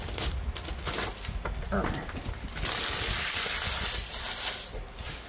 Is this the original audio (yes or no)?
yes